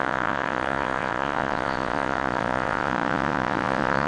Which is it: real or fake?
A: fake